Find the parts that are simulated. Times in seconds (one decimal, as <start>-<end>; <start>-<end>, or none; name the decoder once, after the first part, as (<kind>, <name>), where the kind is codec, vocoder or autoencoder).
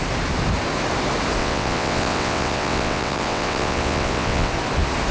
1.4-4.5 (vocoder, WaveNeXt)